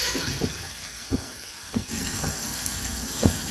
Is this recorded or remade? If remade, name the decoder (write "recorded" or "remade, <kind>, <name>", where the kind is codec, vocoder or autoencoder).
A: remade, codec, SNAC